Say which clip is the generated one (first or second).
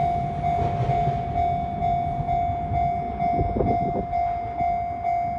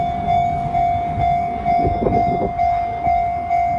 second